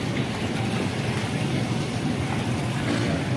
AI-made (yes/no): yes